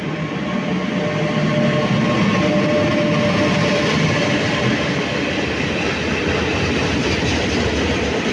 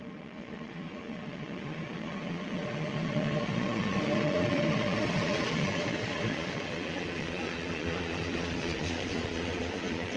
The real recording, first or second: first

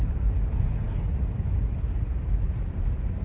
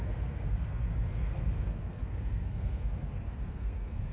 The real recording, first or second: first